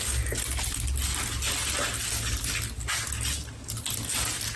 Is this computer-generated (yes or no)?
no